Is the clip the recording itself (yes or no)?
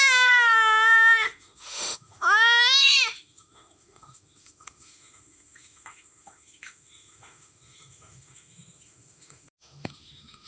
no